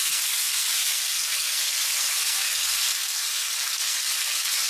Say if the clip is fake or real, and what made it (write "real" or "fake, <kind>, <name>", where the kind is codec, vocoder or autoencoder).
fake, codec, SNAC